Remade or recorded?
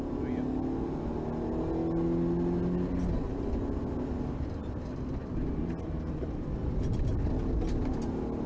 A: recorded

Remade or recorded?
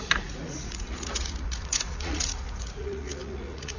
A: remade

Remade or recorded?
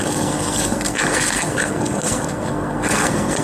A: remade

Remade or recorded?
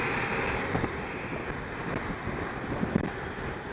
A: recorded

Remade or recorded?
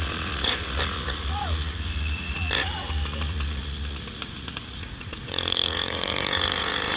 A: remade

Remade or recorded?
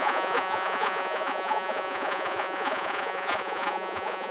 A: remade